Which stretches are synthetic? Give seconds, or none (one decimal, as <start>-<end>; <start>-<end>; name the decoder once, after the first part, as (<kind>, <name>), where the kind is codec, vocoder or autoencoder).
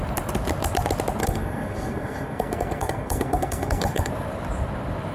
1.2-4.1 (codec, SNAC)